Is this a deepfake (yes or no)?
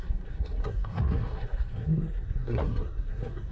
yes